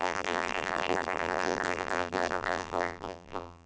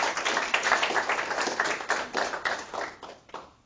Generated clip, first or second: first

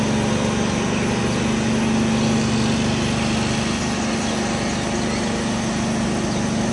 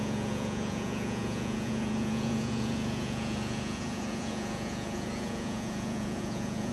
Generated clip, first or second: second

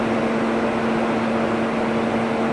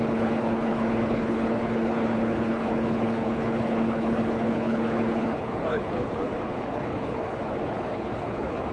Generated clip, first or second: second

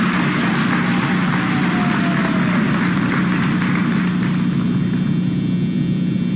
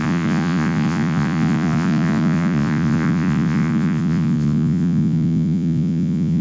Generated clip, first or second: second